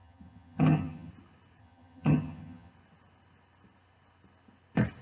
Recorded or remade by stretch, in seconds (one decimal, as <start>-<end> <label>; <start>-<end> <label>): 0.0-1.1 remade; 1.1-1.6 recorded; 1.6-2.7 remade; 2.7-5.0 recorded